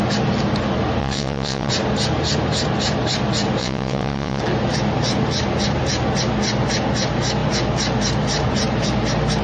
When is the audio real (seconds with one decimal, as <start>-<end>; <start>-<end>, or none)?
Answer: 0.0-1.0; 1.7-3.6; 4.4-9.4